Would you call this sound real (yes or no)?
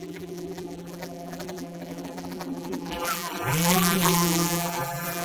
no